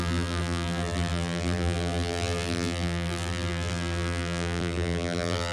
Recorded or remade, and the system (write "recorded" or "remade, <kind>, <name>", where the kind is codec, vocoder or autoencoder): remade, vocoder, BigVGAN v2